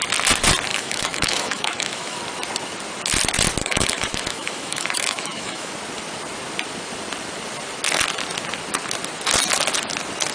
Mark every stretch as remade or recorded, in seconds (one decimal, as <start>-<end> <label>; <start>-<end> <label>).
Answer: 0.0-0.7 recorded; 0.7-2.2 remade; 2.2-3.6 recorded; 3.6-5.7 remade; 5.7-10.3 recorded